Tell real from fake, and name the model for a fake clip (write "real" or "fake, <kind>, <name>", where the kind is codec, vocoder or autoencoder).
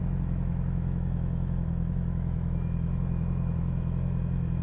fake, autoencoder, DAC-VAE